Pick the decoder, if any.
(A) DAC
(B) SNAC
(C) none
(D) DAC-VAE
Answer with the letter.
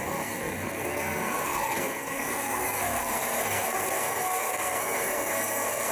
B